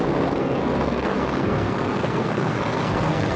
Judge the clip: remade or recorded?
remade